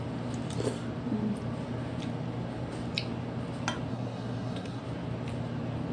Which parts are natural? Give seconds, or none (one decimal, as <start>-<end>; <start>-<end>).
0.0-3.9; 4.8-5.9